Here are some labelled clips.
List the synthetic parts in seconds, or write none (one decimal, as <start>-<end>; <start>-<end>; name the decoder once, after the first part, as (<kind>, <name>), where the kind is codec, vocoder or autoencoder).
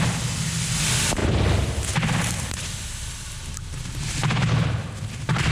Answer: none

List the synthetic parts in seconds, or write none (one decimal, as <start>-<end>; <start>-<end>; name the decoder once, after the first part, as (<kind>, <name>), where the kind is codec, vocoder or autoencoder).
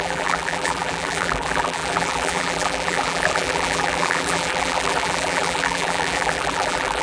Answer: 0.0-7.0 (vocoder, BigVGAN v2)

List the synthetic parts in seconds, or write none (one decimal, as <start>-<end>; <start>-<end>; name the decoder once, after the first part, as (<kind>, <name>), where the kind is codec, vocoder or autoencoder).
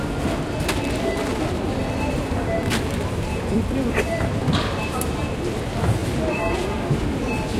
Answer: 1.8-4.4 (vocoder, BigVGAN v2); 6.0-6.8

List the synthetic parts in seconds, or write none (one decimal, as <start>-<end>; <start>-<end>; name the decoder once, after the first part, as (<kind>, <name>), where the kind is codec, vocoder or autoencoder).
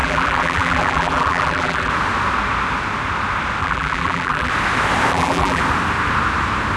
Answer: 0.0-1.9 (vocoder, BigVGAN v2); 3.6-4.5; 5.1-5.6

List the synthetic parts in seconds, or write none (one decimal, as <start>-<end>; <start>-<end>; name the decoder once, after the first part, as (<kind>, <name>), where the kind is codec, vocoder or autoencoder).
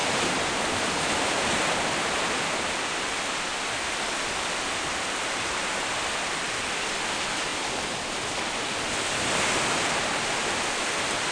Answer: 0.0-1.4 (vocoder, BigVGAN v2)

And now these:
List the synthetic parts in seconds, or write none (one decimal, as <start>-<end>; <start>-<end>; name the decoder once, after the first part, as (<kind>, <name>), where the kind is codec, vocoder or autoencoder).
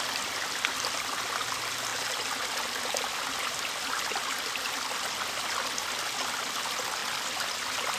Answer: none